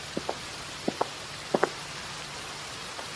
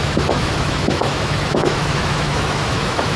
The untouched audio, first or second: first